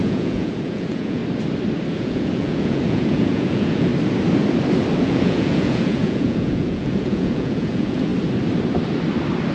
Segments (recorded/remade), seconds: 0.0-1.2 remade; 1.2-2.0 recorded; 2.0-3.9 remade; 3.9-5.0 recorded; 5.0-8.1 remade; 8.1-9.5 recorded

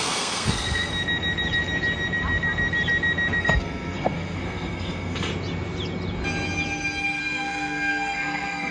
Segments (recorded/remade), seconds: 0.0-0.9 remade; 0.9-3.4 recorded; 3.4-5.3 remade; 5.3-7.2 recorded; 7.2-8.7 remade

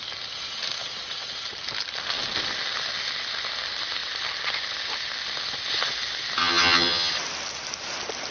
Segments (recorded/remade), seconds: 0.0-6.4 recorded; 6.4-7.1 remade; 7.1-8.3 recorded

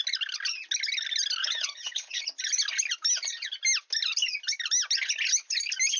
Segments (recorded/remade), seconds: 0.0-1.4 recorded; 1.4-2.2 remade; 2.2-6.0 recorded

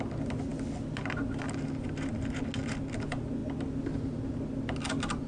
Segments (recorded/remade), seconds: 0.0-5.3 recorded

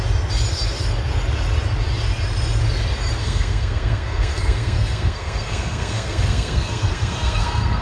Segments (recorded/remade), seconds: 0.0-3.2 recorded; 3.2-7.8 remade

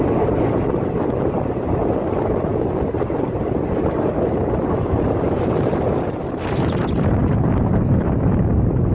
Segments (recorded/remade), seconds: 0.0-2.0 remade; 2.0-2.9 recorded; 2.9-8.9 remade

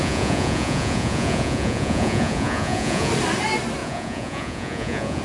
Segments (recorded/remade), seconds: 0.0-3.1 remade; 3.1-3.8 recorded; 3.8-5.2 remade